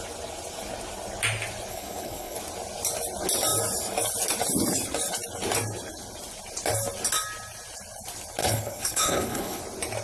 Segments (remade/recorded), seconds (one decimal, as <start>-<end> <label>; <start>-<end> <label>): 0.0-1.7 recorded; 1.7-2.4 remade; 2.4-8.4 recorded; 8.4-9.6 remade; 9.6-10.0 recorded